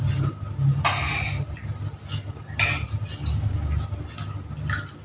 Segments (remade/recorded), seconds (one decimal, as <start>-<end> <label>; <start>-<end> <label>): 0.0-5.0 recorded